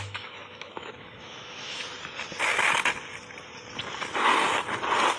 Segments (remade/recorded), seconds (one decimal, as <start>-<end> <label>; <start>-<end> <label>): 0.0-1.9 remade; 1.9-5.2 recorded